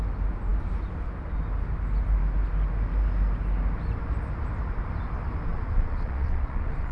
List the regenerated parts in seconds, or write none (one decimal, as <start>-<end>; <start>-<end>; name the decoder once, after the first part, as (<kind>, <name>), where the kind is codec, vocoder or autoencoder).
5.5-6.9 (vocoder, Vocos)